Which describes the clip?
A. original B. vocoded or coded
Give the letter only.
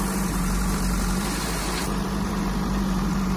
B